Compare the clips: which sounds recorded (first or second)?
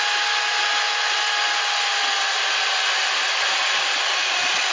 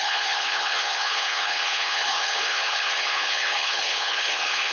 first